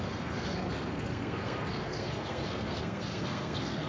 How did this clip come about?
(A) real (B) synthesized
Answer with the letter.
B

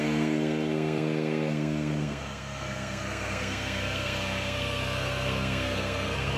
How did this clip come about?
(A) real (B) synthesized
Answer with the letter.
B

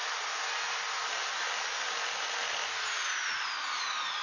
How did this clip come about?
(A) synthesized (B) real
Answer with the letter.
B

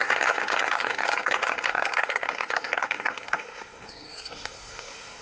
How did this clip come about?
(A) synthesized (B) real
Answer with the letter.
A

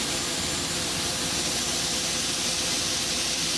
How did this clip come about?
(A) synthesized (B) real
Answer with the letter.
B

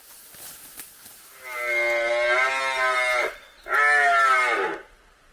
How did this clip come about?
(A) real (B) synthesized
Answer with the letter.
A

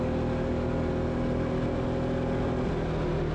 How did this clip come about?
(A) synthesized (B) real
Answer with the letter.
B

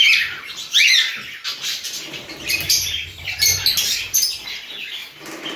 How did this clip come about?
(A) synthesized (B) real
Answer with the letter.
B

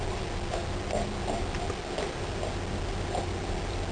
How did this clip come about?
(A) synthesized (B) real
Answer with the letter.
B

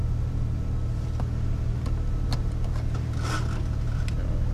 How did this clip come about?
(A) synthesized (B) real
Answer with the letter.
B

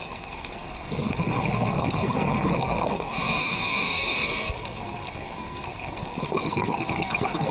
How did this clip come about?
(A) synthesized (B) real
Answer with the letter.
A